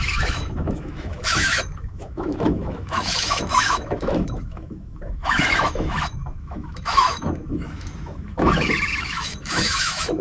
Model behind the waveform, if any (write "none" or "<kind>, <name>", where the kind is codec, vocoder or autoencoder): autoencoder, DAC-VAE